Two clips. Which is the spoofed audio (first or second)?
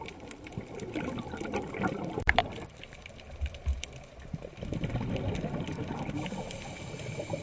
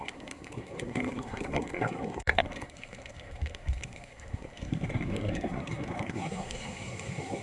second